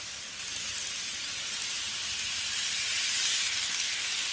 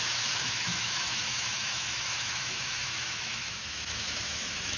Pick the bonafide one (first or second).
first